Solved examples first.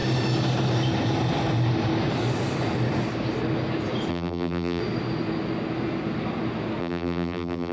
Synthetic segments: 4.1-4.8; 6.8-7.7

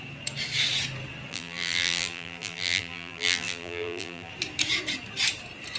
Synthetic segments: 1.3-4.3

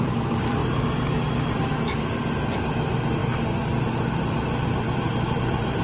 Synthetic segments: 0.0-0.6; 1.5-5.8

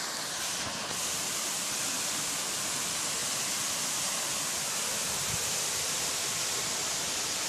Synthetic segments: 3.2-3.9

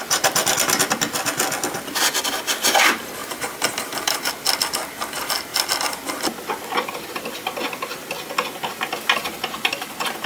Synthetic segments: 3.2-4.3

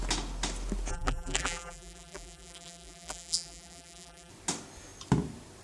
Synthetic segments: 0.9-4.3